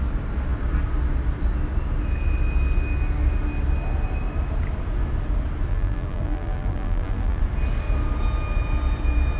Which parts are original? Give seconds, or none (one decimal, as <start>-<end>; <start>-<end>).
0.0-5.7; 7.4-9.4